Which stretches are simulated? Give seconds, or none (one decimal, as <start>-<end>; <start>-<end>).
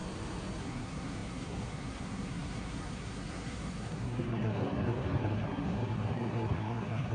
0.6-7.1